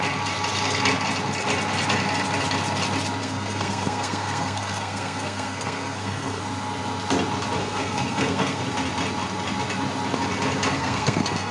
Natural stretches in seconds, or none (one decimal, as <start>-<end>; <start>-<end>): 0.0-3.2; 6.4-7.6; 8.6-10.7